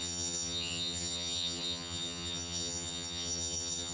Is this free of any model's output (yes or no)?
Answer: no